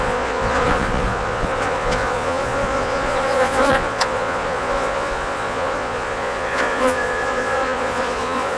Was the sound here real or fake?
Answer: fake